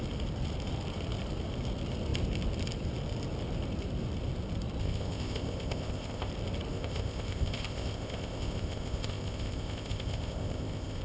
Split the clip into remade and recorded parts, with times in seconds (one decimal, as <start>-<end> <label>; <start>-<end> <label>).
0.0-4.8 recorded; 4.8-6.3 remade; 6.3-6.7 recorded; 6.7-11.0 remade

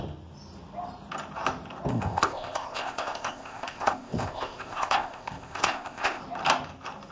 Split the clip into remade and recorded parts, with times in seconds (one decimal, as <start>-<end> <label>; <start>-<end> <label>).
0.0-1.9 recorded; 1.9-6.2 remade; 6.2-7.1 recorded

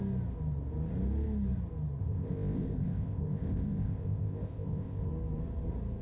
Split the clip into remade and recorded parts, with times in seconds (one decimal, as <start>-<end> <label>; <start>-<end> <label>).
0.0-2.0 recorded; 2.0-5.1 remade; 5.1-6.0 recorded

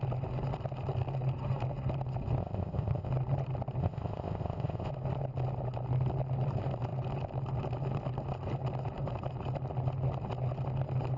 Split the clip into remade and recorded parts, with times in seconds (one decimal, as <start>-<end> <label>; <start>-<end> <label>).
0.0-2.4 recorded; 2.4-3.1 remade; 3.1-3.8 recorded; 3.8-4.9 remade; 4.9-11.2 recorded

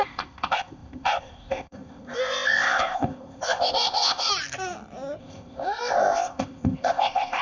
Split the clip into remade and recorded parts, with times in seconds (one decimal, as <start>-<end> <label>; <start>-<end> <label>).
0.0-4.3 remade; 4.3-5.2 recorded; 5.2-7.4 remade

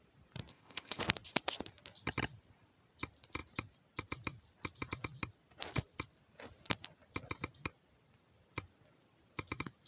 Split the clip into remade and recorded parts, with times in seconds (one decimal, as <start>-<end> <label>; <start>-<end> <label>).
0.0-0.5 recorded; 0.5-1.0 remade; 1.0-9.9 recorded

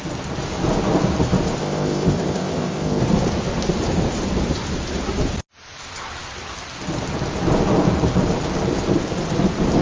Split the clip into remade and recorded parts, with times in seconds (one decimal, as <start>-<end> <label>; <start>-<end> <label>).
0.0-1.6 recorded; 1.6-3.0 remade; 3.0-9.8 recorded